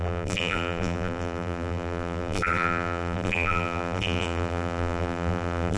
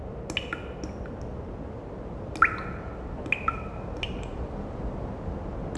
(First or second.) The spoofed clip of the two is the first